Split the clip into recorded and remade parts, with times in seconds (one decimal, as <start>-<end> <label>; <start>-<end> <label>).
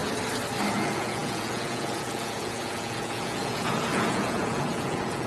0.0-0.7 recorded; 0.7-5.3 remade